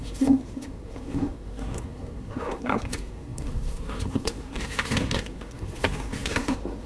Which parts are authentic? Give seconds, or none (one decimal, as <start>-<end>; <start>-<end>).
none